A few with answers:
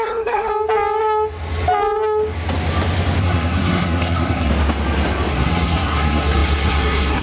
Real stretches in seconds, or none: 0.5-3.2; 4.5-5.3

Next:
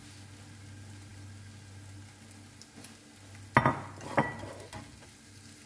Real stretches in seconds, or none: 0.0-5.7

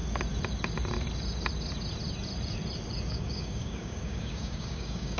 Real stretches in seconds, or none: 0.0-3.1

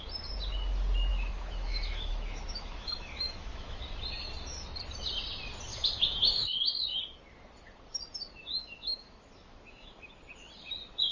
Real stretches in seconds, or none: 0.0-1.1; 3.8-5.7; 7.0-8.6; 10.2-11.1

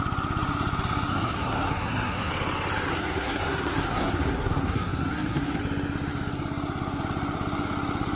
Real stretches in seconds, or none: 0.0-1.1; 2.3-2.9; 5.6-8.2

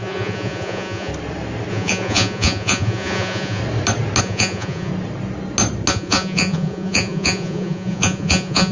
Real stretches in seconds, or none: 1.1-1.7; 3.6-4.2; 4.9-5.9